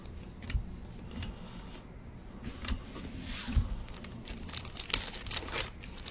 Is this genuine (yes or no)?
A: yes